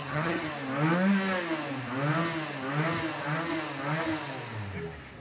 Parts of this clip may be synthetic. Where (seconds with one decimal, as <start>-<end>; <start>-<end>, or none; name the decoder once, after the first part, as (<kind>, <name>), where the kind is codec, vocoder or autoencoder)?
0.0-0.5 (vocoder, HiFi-GAN)